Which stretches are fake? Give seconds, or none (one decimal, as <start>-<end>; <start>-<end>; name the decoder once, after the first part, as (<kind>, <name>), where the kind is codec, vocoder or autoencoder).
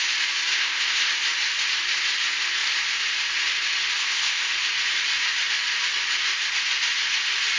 0.5-1.1 (codec, ZipCodec); 4.0-4.5